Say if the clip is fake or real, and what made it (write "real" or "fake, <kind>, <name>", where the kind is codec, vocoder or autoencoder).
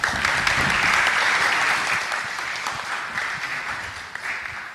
real